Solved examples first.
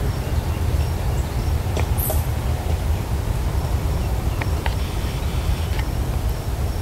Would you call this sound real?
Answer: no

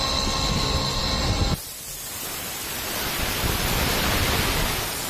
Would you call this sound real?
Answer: yes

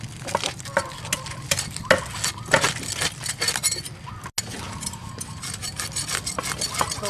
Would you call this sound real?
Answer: yes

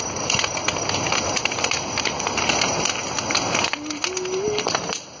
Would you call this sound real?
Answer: yes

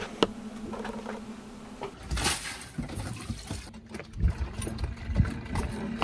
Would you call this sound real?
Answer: yes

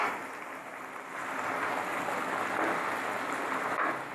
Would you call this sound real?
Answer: yes